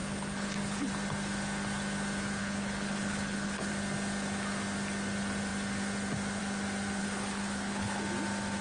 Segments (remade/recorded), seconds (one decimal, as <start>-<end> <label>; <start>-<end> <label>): 0.0-0.9 remade; 0.9-2.4 recorded; 2.4-3.7 remade; 3.7-7.0 recorded; 7.0-8.0 remade; 8.0-8.6 recorded